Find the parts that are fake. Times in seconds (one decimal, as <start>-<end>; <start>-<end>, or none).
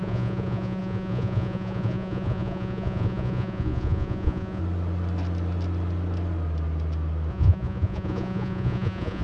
0.0-4.6; 7.3-9.2